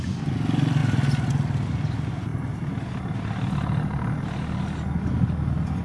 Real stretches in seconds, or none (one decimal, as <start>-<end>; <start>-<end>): 0.0-5.8